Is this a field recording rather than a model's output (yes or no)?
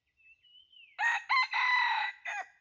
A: yes